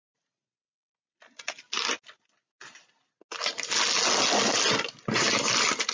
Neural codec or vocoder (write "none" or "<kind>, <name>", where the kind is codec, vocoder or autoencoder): none